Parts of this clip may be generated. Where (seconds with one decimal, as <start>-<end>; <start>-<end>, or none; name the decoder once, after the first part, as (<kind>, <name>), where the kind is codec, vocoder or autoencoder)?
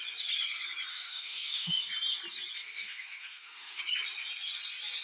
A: 0.9-1.8 (autoencoder, DAC-VAE); 2.6-3.8